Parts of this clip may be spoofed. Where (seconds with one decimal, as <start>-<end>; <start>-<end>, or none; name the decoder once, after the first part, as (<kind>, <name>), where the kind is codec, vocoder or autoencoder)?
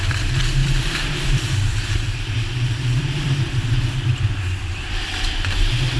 0.0-4.3 (vocoder, BigVGAN v2); 4.9-6.0